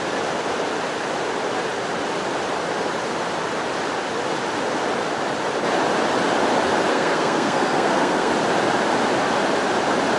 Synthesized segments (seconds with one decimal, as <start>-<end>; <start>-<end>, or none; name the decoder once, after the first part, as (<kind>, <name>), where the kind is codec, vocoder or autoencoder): 6.9-8.3 (codec, SNAC)